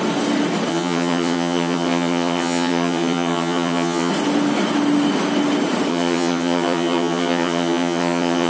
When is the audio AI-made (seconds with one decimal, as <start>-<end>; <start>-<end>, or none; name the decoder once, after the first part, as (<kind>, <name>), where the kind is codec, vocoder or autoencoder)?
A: 0.7-4.1 (vocoder, HiFi-GAN); 5.9-8.5